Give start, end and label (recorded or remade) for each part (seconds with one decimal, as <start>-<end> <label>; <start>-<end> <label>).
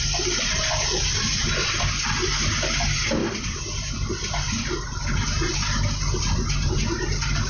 0.0-7.5 recorded